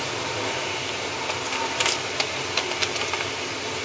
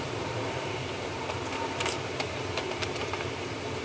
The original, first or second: first